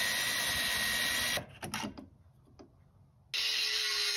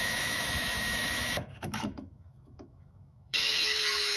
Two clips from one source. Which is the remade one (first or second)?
second